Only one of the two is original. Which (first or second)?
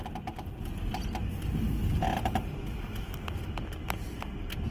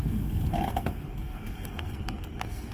first